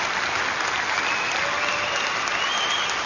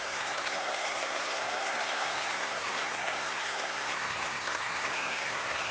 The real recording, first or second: first